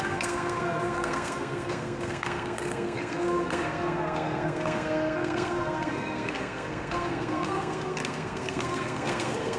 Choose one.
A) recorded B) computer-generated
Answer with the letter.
B